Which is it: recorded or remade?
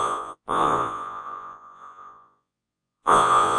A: remade